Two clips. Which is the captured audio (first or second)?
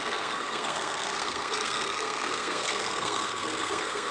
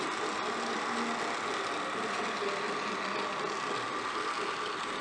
second